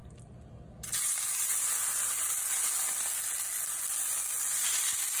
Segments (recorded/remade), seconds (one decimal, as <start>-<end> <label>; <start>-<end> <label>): 0.0-5.2 recorded